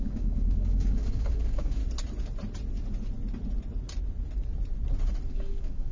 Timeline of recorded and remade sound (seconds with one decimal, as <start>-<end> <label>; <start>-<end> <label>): 0.0-1.8 remade; 1.8-5.3 recorded; 5.3-5.9 remade